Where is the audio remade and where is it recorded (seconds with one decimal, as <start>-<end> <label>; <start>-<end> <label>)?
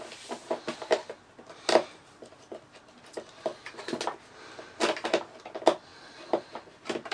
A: 0.0-7.1 recorded